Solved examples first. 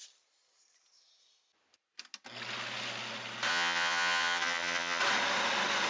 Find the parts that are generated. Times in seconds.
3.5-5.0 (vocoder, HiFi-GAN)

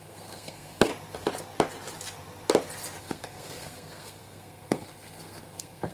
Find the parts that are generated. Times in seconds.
0.0-0.9 (codec, SNAC); 3.0-5.9

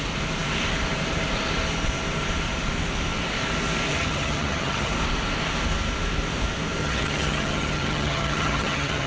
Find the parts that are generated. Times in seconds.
3.9-4.9 (vocoder, HiFi-GAN); 6.8-9.1

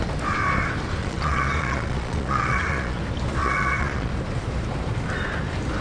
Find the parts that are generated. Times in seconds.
1.0-3.0 (vocoder, Vocos); 3.4-4.1

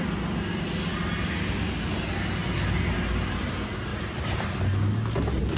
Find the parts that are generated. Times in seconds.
3.9-4.6 (vocoder, BigVGAN v2)

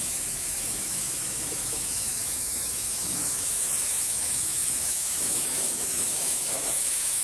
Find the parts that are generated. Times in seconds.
0.0-7.2 (autoencoder, DAC-VAE)

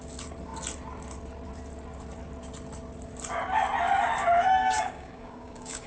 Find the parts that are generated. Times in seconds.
4.6-5.9 (codec, DAC)

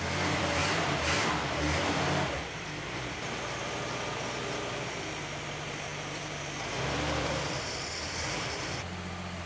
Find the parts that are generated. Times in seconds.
0.0-0.6 (vocoder, BigVGAN v2); 1.9-9.5